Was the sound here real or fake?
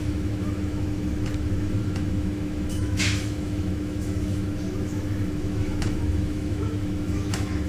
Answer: fake